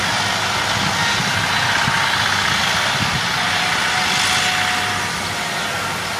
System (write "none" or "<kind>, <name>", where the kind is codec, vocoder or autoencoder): none